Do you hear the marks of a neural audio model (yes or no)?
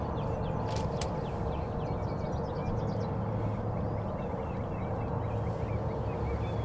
no